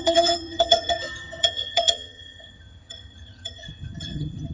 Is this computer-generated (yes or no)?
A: yes